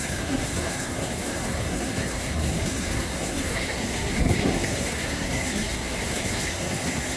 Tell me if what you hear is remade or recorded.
remade